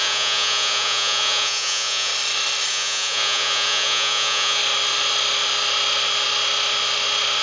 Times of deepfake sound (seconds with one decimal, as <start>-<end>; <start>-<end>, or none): 0.0-2.1; 2.7-4.6